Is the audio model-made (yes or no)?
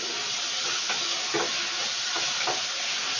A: no